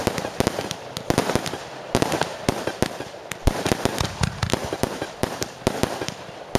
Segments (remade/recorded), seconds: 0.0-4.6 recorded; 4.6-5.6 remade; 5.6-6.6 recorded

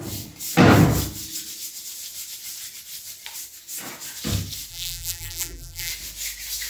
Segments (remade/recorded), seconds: 0.0-4.7 recorded; 4.7-5.9 remade; 5.9-6.7 recorded

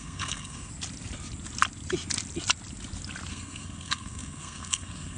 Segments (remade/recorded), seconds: 0.0-0.7 remade; 0.7-3.3 recorded; 3.3-5.2 remade

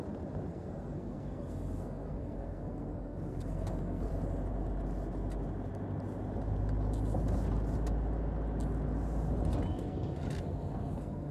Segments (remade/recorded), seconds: 0.0-0.5 recorded; 0.5-4.1 remade; 4.1-9.7 recorded; 9.7-11.3 remade